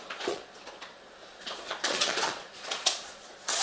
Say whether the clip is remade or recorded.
remade